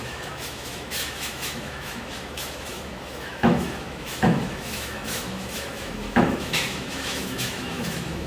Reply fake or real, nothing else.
fake